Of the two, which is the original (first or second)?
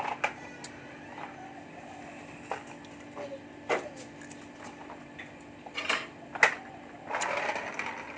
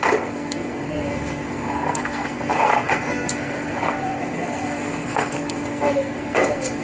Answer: first